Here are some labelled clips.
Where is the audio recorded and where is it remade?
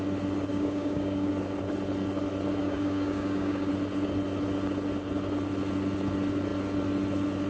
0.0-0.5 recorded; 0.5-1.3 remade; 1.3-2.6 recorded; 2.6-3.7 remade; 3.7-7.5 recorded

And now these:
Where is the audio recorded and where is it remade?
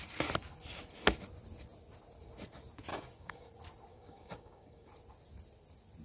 0.0-2.9 recorded; 2.9-3.5 remade; 3.5-3.9 recorded; 3.9-4.9 remade; 4.9-6.0 recorded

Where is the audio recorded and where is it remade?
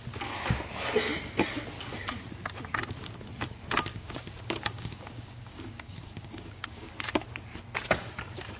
0.0-3.9 recorded; 3.9-6.9 remade; 6.9-8.6 recorded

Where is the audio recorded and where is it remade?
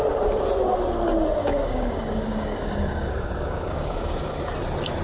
0.0-1.4 recorded; 1.4-4.4 remade; 4.4-5.0 recorded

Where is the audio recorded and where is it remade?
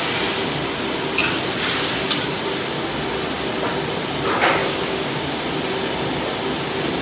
0.0-4.6 recorded; 4.6-5.4 remade; 5.4-7.0 recorded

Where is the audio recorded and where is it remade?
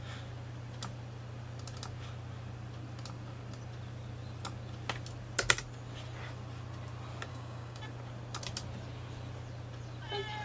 0.0-7.3 recorded; 7.3-7.8 remade; 7.8-10.4 recorded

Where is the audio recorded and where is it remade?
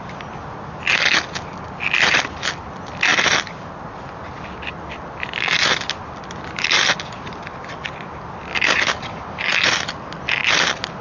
0.0-8.5 recorded; 8.5-9.5 remade; 9.5-11.0 recorded